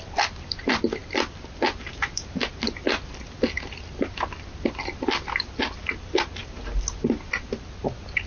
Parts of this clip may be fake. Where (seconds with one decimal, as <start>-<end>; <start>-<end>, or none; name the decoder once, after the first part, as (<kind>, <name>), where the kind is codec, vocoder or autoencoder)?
none